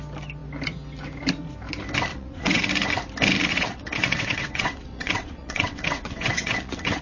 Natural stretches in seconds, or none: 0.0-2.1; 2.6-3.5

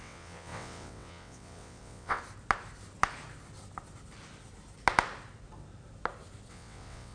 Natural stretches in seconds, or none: 2.2-6.5

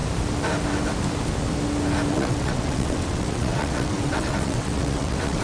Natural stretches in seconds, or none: 0.0-2.1